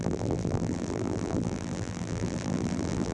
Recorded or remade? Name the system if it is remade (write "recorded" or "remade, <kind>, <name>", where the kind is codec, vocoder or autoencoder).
remade, vocoder, BigVGAN v2